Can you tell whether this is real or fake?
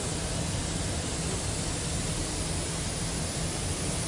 real